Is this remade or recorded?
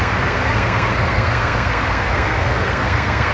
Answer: remade